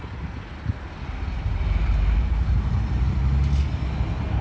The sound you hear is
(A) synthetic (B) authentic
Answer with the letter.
B